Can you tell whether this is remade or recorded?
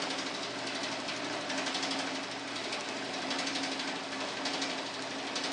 recorded